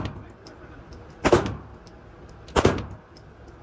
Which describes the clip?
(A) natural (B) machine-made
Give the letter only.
A